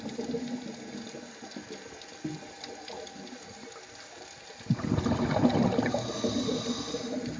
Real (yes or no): yes